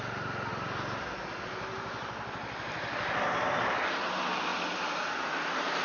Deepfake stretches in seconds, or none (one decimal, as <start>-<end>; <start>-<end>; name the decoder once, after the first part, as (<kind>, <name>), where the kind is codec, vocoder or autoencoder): none